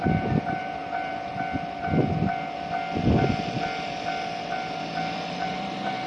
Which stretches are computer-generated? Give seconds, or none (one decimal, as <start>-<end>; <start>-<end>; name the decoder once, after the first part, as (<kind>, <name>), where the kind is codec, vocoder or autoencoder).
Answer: 0.0-0.8 (vocoder, BigVGAN v2); 4.5-6.1